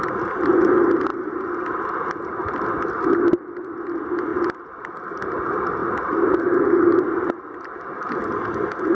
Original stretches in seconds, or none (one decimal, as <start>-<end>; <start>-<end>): 0.0-8.9